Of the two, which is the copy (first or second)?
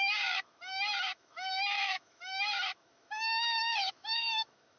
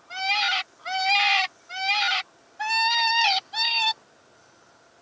first